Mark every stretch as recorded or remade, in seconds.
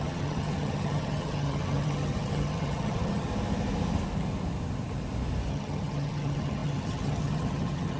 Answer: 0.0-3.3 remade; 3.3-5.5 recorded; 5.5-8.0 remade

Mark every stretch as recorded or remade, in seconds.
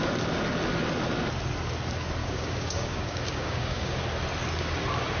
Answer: 0.0-2.2 recorded; 2.2-4.0 remade; 4.0-5.2 recorded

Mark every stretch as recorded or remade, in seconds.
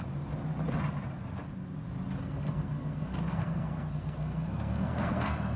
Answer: 0.0-2.2 recorded; 2.2-5.6 remade